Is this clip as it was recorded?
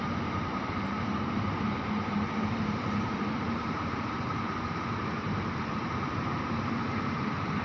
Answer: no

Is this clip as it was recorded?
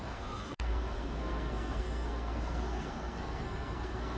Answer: no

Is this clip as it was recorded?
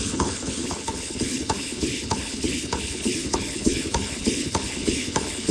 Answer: no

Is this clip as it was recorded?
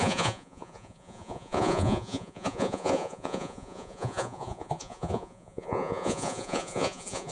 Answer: no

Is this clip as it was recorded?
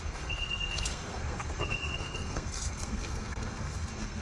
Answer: no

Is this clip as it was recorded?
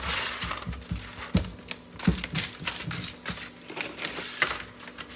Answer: yes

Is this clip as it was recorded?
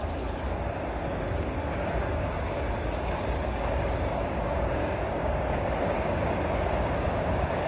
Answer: no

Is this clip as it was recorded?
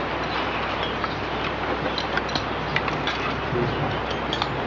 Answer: yes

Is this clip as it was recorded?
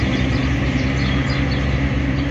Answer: yes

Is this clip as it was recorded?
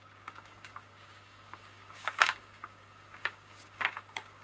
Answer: no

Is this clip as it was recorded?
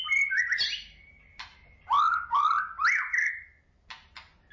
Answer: yes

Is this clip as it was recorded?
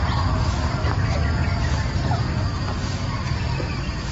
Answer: yes